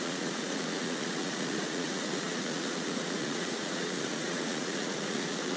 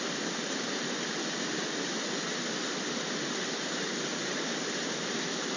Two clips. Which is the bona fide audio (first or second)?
second